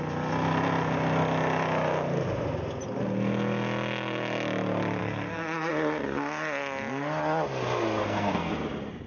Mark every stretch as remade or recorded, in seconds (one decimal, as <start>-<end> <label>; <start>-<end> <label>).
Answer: 0.0-5.0 recorded; 5.0-5.7 remade; 5.7-8.0 recorded; 8.0-8.5 remade; 8.5-9.1 recorded